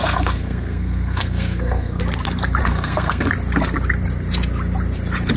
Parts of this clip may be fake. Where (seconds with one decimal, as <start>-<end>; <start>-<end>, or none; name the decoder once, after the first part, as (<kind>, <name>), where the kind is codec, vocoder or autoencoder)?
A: 0.0-2.0 (codec, SNAC); 2.6-3.3